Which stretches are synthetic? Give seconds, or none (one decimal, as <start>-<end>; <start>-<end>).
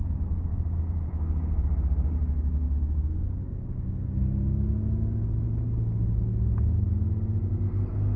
0.5-1.1